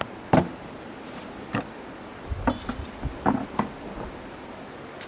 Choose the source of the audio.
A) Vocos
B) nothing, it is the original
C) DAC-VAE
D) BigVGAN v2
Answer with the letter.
B